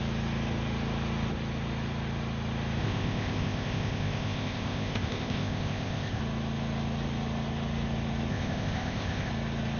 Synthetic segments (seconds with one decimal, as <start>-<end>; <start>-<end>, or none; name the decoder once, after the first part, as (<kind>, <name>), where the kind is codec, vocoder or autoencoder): 2.8-6.2 (codec, ZipCodec); 8.3-9.3

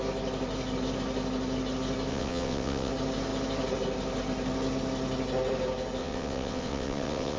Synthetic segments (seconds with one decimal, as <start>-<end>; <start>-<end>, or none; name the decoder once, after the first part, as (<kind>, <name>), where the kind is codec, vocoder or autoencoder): 2.1-2.9 (vocoder, WaveNeXt); 6.0-7.4

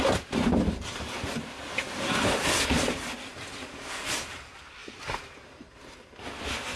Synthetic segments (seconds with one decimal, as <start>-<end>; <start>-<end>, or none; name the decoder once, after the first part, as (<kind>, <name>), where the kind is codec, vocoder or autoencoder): none